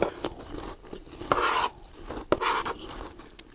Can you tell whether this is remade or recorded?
recorded